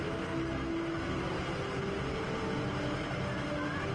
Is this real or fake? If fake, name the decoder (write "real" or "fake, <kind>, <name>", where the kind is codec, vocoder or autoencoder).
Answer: real